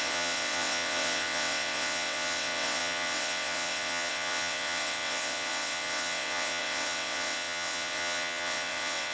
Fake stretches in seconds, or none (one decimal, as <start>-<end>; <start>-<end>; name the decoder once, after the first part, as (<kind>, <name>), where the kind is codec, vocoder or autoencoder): 0.0-9.1 (vocoder, WaveNeXt)